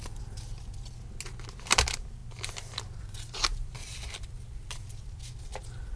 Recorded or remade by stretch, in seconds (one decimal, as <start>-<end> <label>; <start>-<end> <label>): 0.0-6.0 recorded